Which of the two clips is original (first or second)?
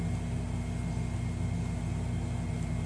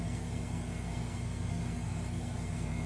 first